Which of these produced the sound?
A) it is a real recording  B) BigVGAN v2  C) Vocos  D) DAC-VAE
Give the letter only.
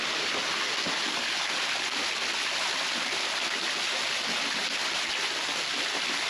A